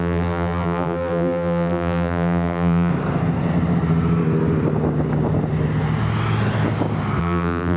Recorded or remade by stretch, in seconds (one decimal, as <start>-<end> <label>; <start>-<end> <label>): 0.0-2.9 remade; 2.9-7.2 recorded; 7.2-7.8 remade